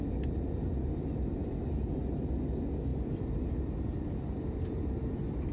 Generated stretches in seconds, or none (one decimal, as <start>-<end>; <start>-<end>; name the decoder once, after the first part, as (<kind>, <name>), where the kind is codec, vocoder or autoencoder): none

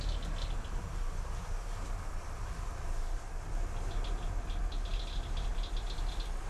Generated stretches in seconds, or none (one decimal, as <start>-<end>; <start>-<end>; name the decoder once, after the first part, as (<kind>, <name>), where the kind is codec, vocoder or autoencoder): none

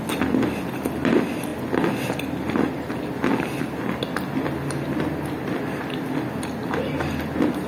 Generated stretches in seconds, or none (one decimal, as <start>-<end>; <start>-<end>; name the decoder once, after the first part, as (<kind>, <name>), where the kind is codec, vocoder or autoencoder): none

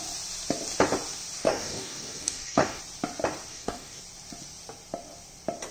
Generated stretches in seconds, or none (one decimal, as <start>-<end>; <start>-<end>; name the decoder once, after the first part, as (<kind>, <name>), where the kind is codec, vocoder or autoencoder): 1.4-2.8 (codec, DAC); 3.5-4.0

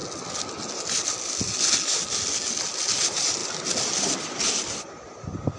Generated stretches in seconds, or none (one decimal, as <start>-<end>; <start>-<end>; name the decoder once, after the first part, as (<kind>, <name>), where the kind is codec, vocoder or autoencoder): 2.9-3.4 (vocoder, BigVGAN v2); 4.0-5.6

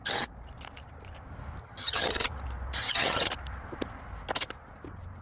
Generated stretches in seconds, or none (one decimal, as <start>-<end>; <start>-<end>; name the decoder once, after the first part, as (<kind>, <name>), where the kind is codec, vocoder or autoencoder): 1.6-2.3 (vocoder, HiFi-GAN); 2.8-3.3

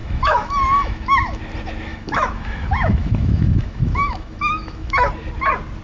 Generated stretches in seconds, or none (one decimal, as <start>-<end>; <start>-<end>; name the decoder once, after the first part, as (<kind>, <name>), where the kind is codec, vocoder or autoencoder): 0.0-1.4 (autoencoder, DAC-VAE); 1.9-5.1

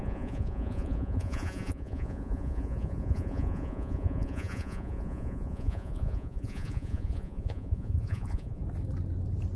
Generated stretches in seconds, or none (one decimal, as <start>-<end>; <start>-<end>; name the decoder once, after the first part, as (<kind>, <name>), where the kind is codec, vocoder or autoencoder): 0.0-8.6 (vocoder, Vocos)